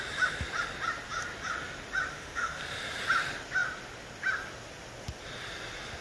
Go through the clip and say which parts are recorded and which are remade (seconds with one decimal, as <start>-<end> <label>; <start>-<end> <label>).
0.0-2.1 recorded; 2.1-2.6 remade; 2.6-6.0 recorded